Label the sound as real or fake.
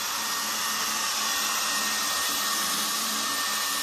real